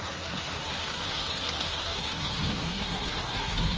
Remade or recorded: remade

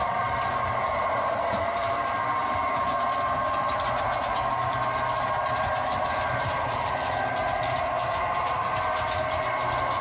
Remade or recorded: remade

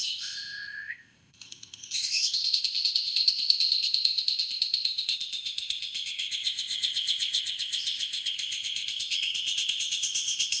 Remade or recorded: remade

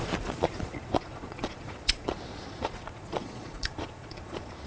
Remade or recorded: remade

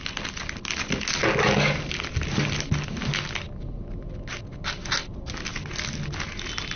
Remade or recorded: recorded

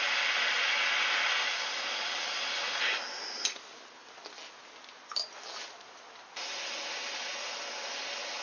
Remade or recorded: recorded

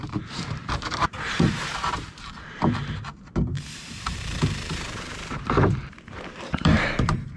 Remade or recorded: remade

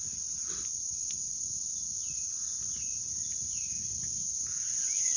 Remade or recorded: remade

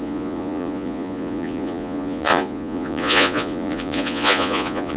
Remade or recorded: remade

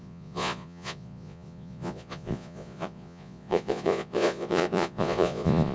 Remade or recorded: remade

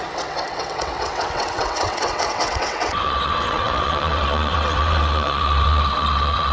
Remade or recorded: remade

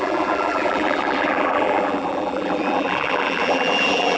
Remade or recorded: remade